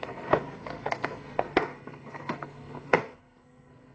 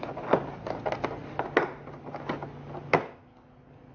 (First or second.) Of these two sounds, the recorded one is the second